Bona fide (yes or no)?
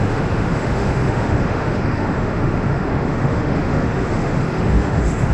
no